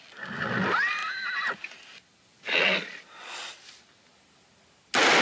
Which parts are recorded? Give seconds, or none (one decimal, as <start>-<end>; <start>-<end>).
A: 0.0-5.2